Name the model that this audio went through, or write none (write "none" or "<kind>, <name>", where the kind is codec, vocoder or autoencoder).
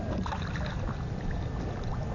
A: none